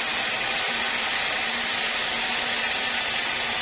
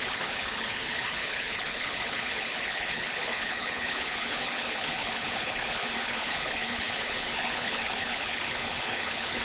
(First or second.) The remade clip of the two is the second